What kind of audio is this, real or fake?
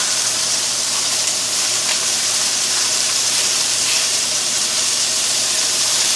fake